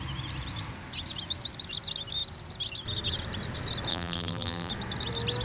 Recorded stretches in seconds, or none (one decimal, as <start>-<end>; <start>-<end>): 0.0-3.9; 4.7-5.4